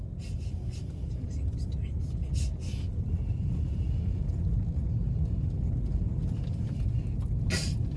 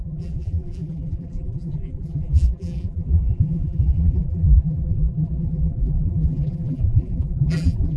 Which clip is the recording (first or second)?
first